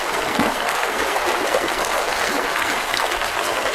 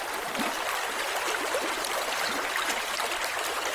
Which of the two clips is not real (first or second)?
first